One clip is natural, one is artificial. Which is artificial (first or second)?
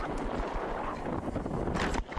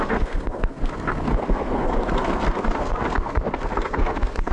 second